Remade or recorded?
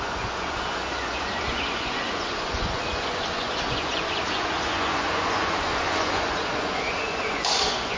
remade